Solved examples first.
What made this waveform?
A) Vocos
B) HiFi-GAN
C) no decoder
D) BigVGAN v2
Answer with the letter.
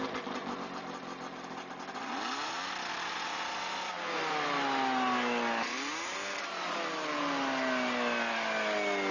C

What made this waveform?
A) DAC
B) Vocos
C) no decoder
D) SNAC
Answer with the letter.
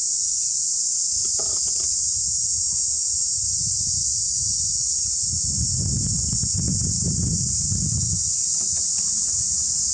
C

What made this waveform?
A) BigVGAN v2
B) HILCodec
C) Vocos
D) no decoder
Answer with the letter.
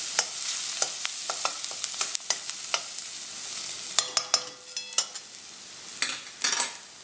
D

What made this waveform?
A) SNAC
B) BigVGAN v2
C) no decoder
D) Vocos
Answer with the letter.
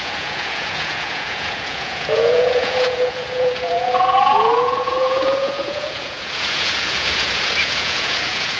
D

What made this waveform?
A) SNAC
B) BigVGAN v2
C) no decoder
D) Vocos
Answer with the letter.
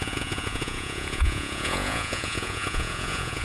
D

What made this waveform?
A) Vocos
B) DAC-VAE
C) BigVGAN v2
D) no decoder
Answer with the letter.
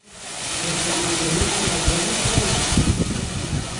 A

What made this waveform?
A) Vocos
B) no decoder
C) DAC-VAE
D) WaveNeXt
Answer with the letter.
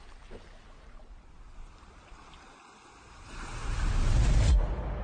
B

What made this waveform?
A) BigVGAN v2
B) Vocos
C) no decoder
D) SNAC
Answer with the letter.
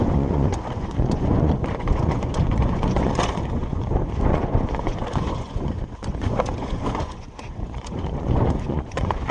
B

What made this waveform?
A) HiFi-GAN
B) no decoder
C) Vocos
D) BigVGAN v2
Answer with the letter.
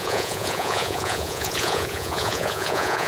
C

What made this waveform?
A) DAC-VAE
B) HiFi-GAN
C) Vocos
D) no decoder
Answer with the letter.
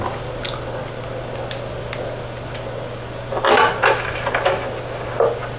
D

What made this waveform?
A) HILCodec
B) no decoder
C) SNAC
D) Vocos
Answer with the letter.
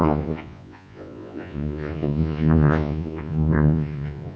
D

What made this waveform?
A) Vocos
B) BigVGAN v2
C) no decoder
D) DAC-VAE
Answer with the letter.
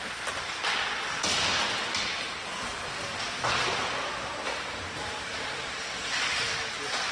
C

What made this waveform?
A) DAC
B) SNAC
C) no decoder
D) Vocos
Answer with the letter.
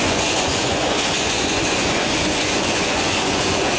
D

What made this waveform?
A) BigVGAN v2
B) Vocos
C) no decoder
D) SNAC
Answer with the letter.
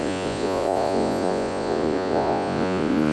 B